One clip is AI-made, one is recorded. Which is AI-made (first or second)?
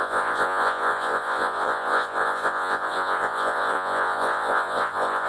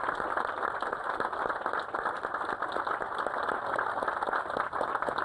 first